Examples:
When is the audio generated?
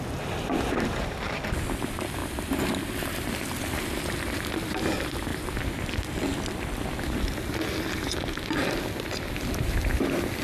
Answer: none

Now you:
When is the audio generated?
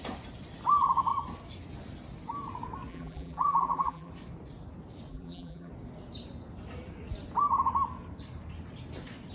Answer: 2.9-4.1; 5.1-5.7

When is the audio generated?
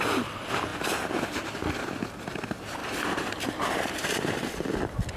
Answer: 2.8-4.7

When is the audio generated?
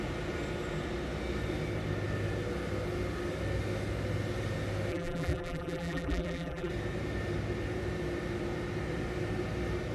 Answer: 4.9-6.7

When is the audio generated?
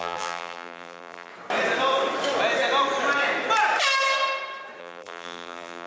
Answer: 0.0-1.3; 4.8-5.9